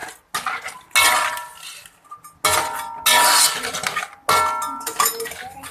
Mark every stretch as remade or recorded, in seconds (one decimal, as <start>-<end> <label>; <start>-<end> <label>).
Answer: 0.0-5.7 recorded